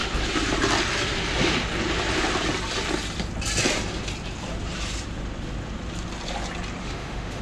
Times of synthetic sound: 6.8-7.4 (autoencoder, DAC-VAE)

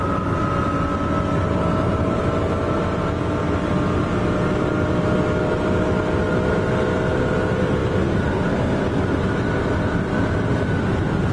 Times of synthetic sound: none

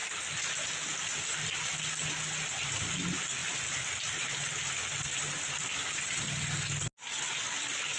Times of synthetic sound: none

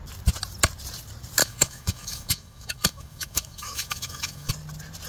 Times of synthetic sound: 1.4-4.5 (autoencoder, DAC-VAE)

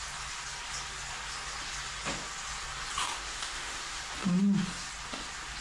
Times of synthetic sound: 3.0-4.0 (autoencoder, DAC-VAE)

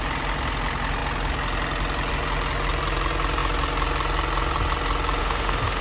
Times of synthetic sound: 5.2-5.8 (autoencoder, DAC-VAE)

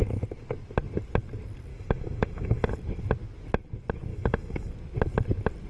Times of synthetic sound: 1.7-2.7 (autoencoder, DAC-VAE); 4.1-4.7

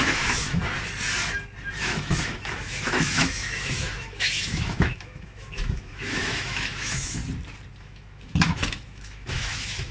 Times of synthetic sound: 0.0-0.6 (autoencoder, DAC-VAE); 1.8-7.2; 7.8-9.9